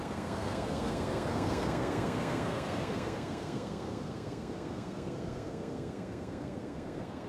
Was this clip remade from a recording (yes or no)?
yes